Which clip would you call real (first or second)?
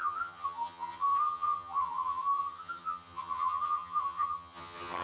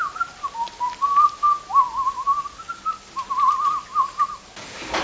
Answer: second